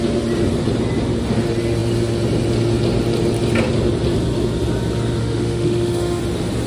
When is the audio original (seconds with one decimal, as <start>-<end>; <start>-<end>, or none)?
0.0-5.2; 6.2-6.7